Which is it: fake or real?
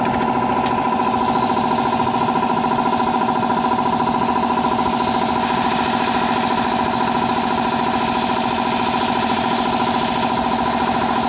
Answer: real